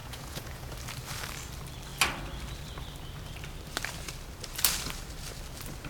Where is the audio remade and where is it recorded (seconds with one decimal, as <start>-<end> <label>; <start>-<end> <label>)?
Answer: 0.0-0.7 remade; 0.7-5.9 recorded